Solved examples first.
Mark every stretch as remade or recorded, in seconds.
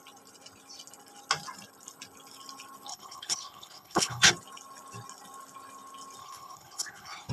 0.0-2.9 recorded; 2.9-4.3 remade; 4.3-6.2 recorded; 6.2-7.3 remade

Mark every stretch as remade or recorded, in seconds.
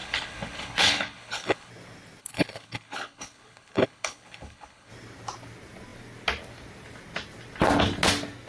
0.0-1.7 remade; 1.7-2.2 recorded; 2.2-4.9 remade; 4.9-8.5 recorded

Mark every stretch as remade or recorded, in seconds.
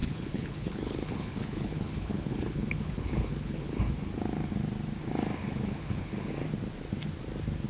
0.0-3.8 remade; 3.8-5.4 recorded; 5.4-6.3 remade; 6.3-7.7 recorded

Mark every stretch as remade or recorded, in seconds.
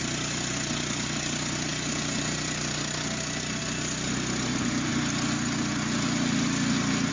0.0-7.1 recorded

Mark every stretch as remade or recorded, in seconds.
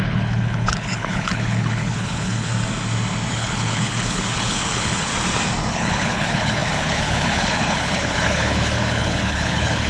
0.0-2.5 remade; 2.5-3.3 recorded; 3.3-5.1 remade; 5.1-5.7 recorded; 5.7-9.9 remade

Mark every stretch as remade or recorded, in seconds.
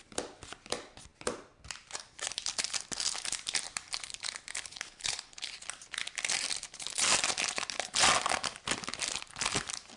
0.0-4.7 recorded; 4.7-5.5 remade; 5.5-10.0 recorded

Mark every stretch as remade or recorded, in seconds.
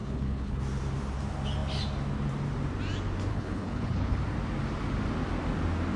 0.0-0.6 remade; 0.6-3.3 recorded; 3.3-4.2 remade; 4.2-6.0 recorded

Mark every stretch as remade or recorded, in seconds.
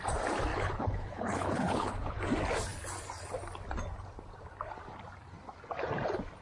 0.0-0.5 recorded; 0.5-2.2 remade; 2.2-6.4 recorded